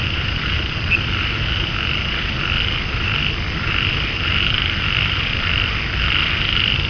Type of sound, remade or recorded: recorded